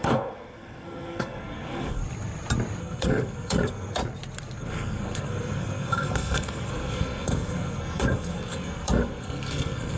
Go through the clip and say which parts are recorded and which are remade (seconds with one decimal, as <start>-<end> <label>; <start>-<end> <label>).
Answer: 0.0-2.0 remade; 2.0-2.8 recorded; 2.8-4.0 remade; 4.0-4.6 recorded; 4.6-10.0 remade